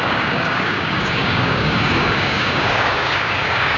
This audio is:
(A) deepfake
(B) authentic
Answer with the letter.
A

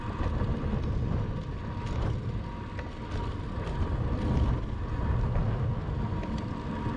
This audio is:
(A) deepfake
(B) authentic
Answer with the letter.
B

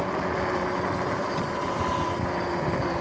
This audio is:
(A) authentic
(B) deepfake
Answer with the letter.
A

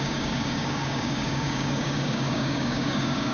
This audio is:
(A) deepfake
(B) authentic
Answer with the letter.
A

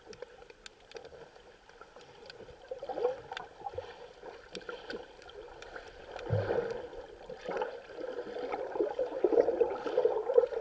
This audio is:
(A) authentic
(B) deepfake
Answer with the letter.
A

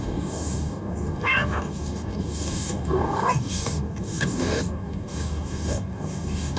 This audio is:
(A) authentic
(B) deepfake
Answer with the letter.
B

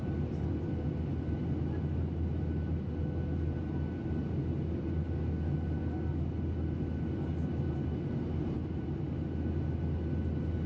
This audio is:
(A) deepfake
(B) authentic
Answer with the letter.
B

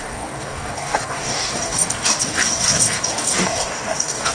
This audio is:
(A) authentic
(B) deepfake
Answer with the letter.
B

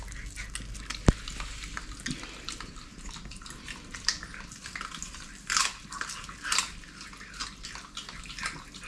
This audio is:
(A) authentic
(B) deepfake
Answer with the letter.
A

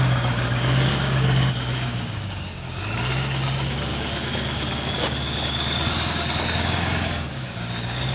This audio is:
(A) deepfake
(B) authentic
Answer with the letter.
A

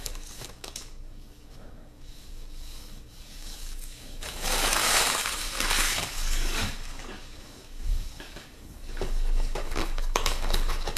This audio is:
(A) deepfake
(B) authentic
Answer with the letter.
A